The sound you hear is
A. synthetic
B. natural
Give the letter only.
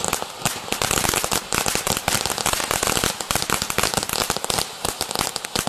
B